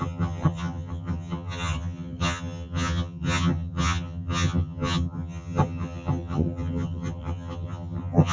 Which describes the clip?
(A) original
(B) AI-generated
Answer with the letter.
B